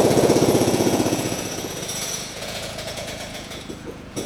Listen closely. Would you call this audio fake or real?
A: fake